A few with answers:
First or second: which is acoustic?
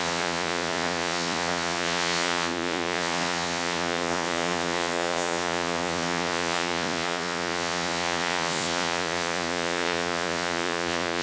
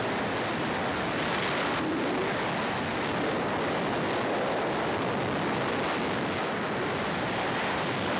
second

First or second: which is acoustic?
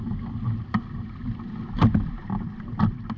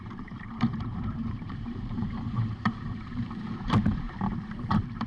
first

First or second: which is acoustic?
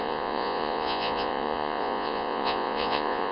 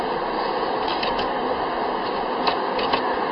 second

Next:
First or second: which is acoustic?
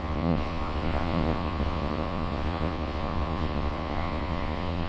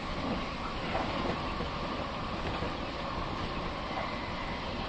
second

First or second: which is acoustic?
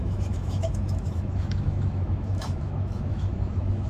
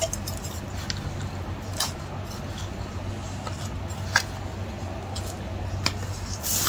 second